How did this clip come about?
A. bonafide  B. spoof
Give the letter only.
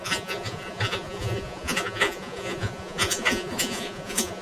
B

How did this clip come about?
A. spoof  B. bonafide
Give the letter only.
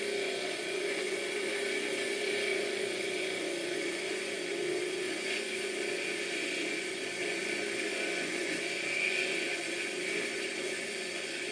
A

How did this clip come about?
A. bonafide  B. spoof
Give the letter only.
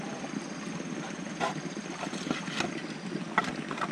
A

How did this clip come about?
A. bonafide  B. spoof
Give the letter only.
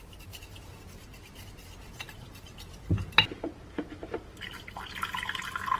A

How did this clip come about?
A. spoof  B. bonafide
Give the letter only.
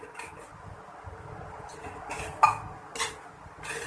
B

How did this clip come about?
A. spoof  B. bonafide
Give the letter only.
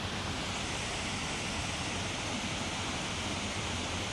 B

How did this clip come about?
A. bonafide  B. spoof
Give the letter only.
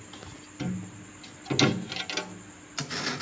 A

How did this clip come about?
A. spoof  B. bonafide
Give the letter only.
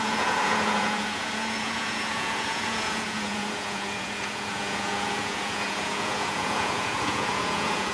A